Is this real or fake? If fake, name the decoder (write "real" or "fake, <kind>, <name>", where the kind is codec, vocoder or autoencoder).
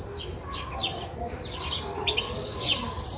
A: real